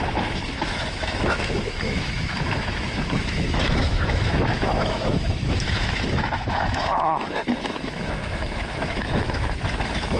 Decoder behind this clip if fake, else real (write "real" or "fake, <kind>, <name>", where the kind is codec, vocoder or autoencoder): fake, autoencoder, DAC-VAE